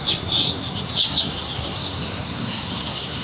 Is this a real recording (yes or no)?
no